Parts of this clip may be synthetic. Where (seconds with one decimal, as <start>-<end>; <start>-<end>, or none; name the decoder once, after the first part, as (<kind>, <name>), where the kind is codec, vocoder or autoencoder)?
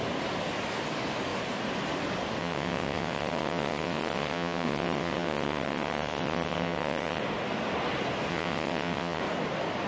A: 2.4-7.2 (vocoder, WaveNeXt); 8.3-9.2